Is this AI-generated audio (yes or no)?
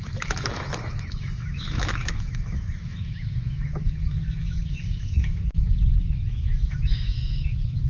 yes